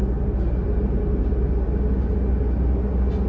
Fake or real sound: real